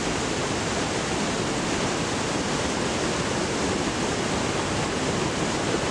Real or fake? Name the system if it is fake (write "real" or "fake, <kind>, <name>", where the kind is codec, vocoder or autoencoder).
real